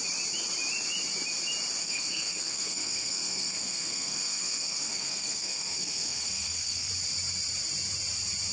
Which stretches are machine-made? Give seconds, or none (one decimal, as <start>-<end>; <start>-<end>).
1.8-6.9